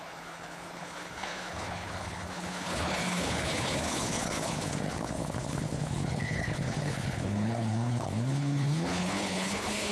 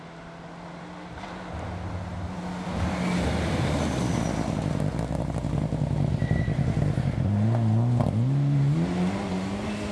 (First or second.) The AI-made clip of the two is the first